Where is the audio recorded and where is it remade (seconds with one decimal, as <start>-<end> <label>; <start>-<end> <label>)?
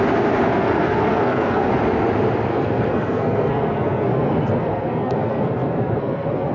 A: 0.0-0.5 recorded; 0.5-1.7 remade; 1.7-2.5 recorded; 2.5-6.5 remade